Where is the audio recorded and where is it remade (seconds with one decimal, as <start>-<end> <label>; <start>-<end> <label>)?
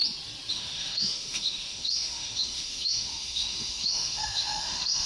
0.0-0.5 recorded; 0.5-5.1 remade